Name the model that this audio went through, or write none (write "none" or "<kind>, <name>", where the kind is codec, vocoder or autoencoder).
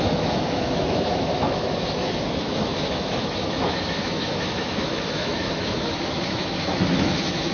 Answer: autoencoder, DAC-VAE